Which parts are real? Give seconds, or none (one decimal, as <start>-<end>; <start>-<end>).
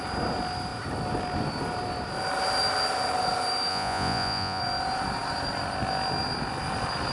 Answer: 0.0-3.7; 4.6-7.1